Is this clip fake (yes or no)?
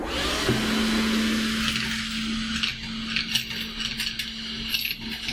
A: no